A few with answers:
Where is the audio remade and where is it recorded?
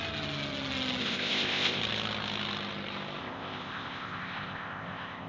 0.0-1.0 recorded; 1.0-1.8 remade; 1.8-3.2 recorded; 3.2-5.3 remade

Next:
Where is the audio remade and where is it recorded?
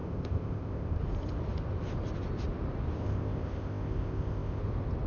0.0-1.0 remade; 1.0-3.0 recorded; 3.0-4.6 remade; 4.6-5.1 recorded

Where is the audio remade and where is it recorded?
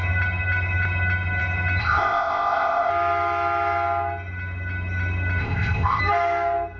0.0-1.8 recorded; 1.8-2.9 remade; 2.9-5.4 recorded; 5.4-6.0 remade; 6.0-6.8 recorded